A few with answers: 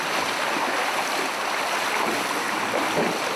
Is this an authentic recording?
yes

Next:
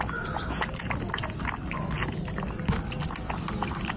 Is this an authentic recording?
yes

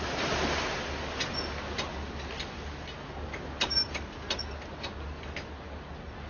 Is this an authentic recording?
yes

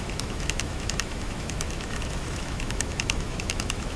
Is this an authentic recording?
no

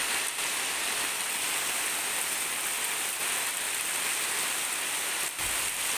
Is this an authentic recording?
yes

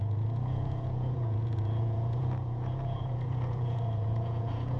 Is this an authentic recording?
no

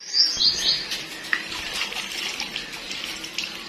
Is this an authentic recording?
yes